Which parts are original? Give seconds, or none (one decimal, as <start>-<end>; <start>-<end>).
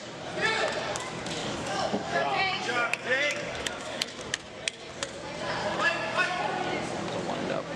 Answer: 0.0-1.4; 4.1-5.6; 6.4-7.8